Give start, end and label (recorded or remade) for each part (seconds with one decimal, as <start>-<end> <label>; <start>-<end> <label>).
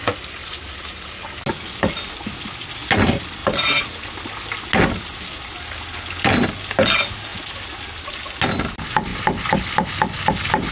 0.0-0.4 recorded; 0.4-1.2 remade; 1.2-3.4 recorded; 3.4-4.1 remade; 4.1-10.7 recorded